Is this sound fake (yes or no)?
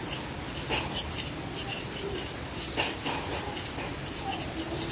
no